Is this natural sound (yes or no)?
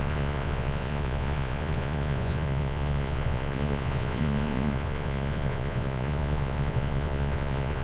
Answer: no